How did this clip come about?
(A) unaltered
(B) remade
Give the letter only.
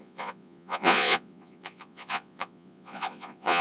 B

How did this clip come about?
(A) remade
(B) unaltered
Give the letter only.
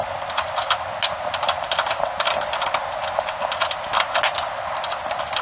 B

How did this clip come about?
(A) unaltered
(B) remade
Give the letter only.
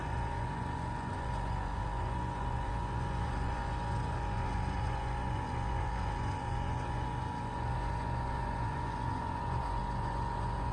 B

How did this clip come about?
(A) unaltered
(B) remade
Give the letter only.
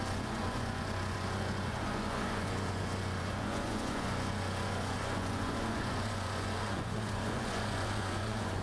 B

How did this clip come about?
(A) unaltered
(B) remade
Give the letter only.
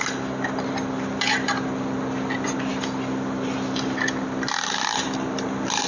A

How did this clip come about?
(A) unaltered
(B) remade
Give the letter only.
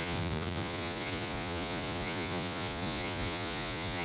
B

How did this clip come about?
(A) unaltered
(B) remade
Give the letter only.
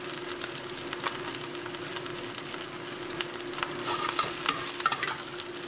A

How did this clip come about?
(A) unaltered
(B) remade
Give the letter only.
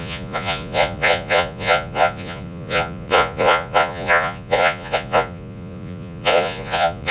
B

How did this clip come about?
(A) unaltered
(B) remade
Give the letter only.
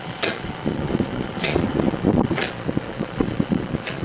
B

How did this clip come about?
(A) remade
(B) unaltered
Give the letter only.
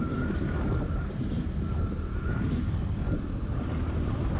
B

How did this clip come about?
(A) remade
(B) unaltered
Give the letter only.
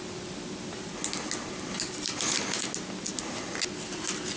B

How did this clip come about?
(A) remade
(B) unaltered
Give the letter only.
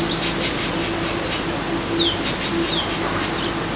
B